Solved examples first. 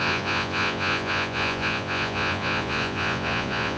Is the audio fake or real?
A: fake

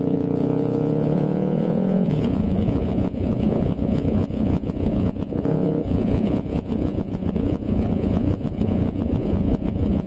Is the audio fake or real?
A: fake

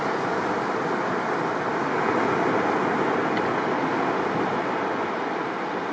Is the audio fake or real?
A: real